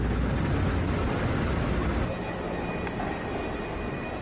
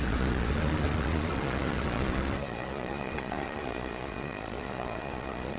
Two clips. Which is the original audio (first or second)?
first